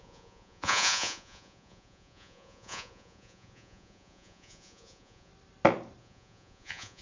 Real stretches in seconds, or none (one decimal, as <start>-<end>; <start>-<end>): 5.3-6.0